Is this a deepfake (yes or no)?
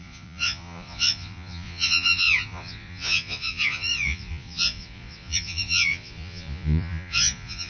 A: yes